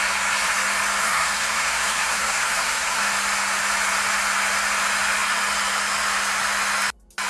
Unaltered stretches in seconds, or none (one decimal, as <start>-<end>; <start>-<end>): 0.0-1.0; 3.1-7.3